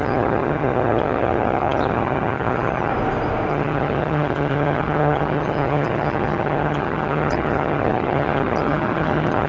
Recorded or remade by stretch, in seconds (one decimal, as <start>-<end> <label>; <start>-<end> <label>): 0.0-2.9 remade; 2.9-3.5 recorded; 3.5-9.5 remade